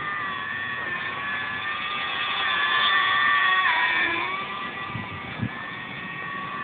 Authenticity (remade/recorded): remade